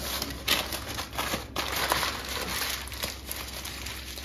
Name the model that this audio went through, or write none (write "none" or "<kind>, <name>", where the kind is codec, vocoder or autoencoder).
none